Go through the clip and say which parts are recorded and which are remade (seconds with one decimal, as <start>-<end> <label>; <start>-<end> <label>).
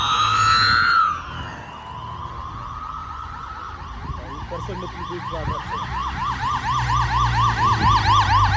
0.0-3.0 recorded; 3.0-3.5 remade; 3.5-8.6 recorded